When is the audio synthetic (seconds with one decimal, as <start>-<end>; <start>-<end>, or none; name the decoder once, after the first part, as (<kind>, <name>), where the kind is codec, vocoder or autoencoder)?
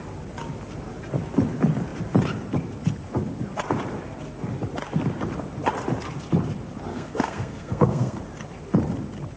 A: 6.9-8.2 (codec, SNAC)